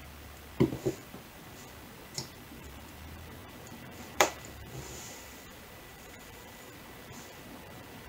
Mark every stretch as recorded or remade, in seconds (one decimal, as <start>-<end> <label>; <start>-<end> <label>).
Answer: 0.0-8.1 remade